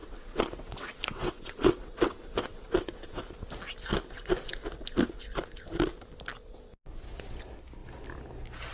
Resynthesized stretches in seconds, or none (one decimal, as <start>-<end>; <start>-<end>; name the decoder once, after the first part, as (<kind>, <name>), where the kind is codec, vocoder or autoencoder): 0.0-3.2 (vocoder, WaveNeXt)